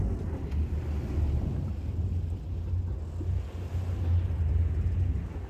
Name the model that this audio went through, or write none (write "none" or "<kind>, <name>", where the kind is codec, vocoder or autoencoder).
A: none